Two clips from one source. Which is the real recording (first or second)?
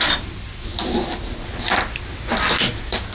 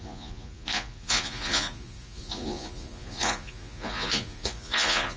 first